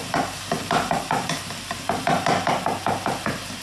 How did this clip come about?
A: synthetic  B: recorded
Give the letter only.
B